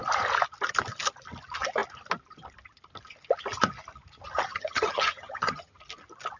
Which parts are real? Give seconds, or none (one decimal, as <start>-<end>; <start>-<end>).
0.0-4.5; 5.8-6.4